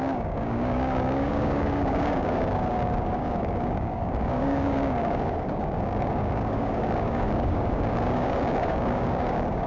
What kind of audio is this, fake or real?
fake